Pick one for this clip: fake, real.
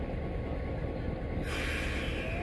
real